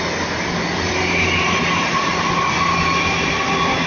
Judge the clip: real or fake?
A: real